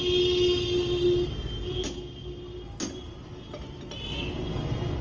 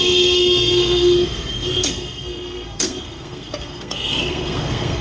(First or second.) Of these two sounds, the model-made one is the second